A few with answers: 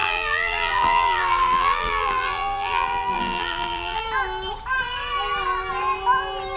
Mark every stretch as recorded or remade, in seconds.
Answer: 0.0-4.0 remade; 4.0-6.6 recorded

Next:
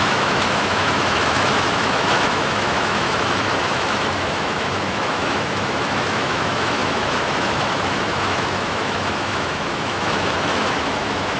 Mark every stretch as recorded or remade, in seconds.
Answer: 0.0-11.4 remade

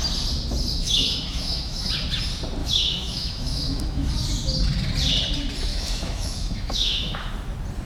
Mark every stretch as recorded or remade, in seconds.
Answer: 0.0-0.8 recorded; 0.8-1.9 remade; 1.9-2.6 recorded; 2.6-4.1 remade; 4.1-5.7 recorded; 5.7-7.3 remade; 7.3-7.8 recorded

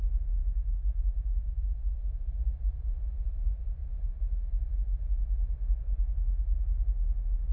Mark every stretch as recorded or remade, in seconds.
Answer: 0.0-0.4 recorded; 0.4-2.0 remade; 2.0-7.5 recorded

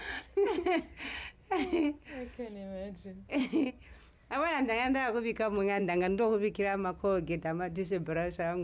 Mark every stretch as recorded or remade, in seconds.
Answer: 0.0-3.0 recorded; 3.0-3.7 remade; 3.7-8.6 recorded